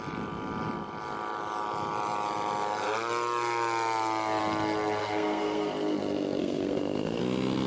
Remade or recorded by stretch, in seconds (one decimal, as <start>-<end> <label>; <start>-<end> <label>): 0.0-5.0 recorded; 5.0-5.7 remade; 5.7-6.4 recorded; 6.4-7.2 remade; 7.2-7.7 recorded